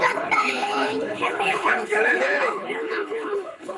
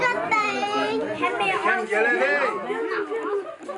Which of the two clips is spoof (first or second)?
first